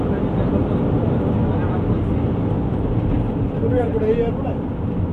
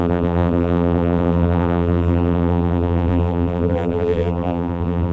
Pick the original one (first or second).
first